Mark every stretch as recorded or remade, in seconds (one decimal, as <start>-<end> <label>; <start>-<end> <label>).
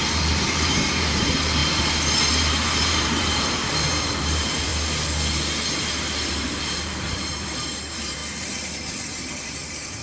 0.0-1.6 remade; 1.6-2.3 recorded; 2.3-4.7 remade; 4.7-5.8 recorded; 5.8-8.2 remade; 8.2-9.3 recorded; 9.3-10.0 remade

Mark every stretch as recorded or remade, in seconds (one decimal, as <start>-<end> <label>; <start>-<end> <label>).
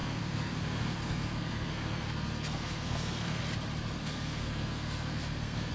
0.0-3.4 remade; 3.4-4.0 recorded; 4.0-5.7 remade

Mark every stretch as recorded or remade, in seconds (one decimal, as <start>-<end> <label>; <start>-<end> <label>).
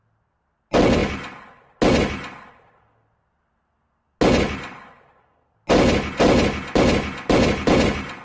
0.0-8.2 recorded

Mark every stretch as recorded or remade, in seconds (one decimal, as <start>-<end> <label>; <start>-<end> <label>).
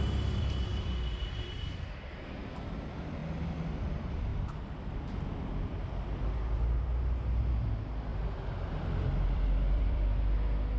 0.0-3.2 remade; 3.2-3.8 recorded; 3.8-4.3 remade; 4.3-7.7 recorded; 7.7-10.8 remade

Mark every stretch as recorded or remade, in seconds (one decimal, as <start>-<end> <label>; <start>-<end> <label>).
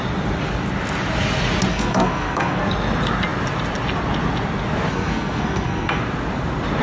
0.0-1.7 recorded; 1.7-2.6 remade; 2.6-4.9 recorded; 4.9-6.0 remade; 6.0-6.8 recorded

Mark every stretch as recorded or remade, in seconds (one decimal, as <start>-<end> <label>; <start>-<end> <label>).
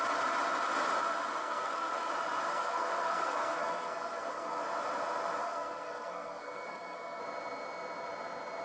0.0-1.4 recorded; 1.4-2.1 remade; 2.1-2.5 recorded; 2.5-4.6 remade; 4.6-5.4 recorded; 5.4-7.2 remade; 7.2-8.6 recorded